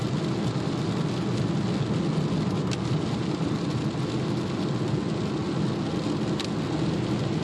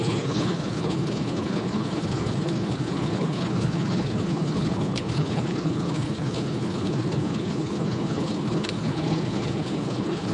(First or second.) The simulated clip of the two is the second